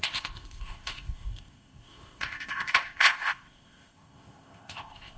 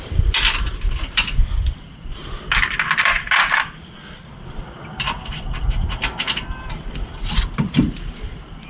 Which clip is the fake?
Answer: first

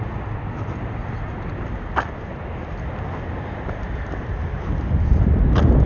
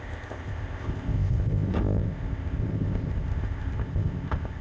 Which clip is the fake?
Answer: second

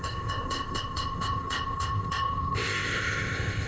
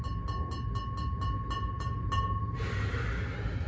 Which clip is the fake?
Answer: first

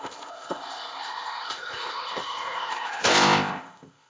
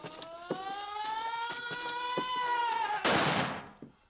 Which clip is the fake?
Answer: first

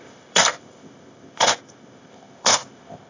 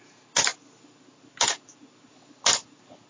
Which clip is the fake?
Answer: first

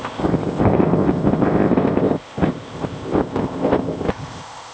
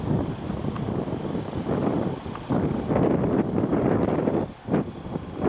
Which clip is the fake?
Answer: first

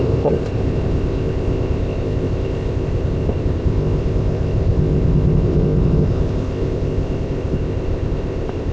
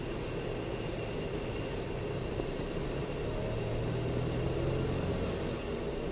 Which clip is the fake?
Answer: first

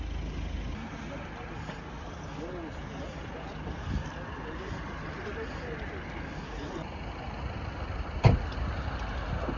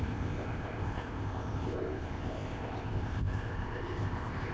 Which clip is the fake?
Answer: second